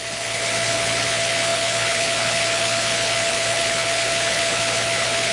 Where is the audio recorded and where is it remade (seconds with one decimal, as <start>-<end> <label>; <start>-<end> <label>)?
0.0-5.3 remade